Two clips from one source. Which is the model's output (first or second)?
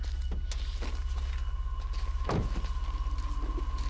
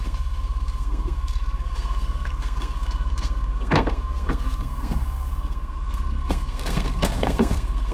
second